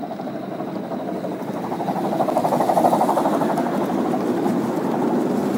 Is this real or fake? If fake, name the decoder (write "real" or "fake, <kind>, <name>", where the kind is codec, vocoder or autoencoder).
real